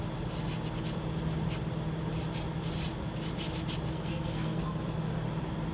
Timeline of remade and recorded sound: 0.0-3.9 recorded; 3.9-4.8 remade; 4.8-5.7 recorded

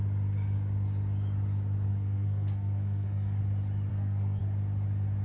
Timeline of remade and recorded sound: 0.0-1.9 recorded; 1.9-3.4 remade; 3.4-3.9 recorded; 3.9-4.4 remade; 4.4-5.2 recorded

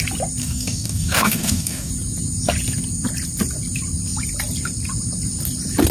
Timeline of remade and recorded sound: 0.0-0.4 recorded; 0.4-1.9 remade; 1.9-5.9 recorded

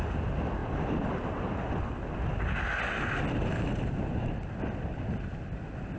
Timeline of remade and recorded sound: 0.0-0.6 recorded; 0.6-2.1 remade; 2.1-6.0 recorded

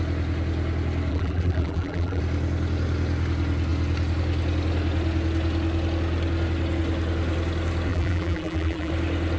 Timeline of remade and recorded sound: 0.0-1.1 recorded; 1.1-2.2 remade; 2.2-7.9 recorded; 7.9-8.9 remade; 8.9-9.4 recorded

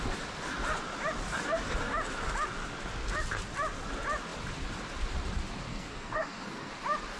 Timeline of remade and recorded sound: 0.0-5.7 recorded; 5.7-6.7 remade; 6.7-7.2 recorded

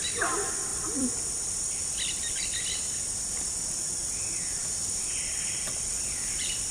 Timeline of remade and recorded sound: 0.0-0.7 recorded; 0.7-3.4 remade; 3.4-4.6 recorded; 4.6-6.0 remade; 6.0-6.7 recorded

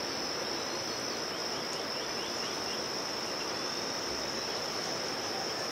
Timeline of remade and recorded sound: 0.0-5.7 recorded